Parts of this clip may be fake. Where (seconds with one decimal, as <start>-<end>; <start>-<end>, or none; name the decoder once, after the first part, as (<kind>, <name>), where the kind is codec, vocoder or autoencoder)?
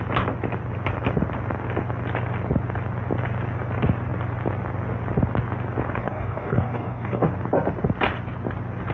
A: 6.0-7.3 (codec, DAC)